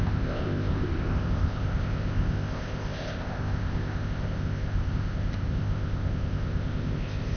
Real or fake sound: fake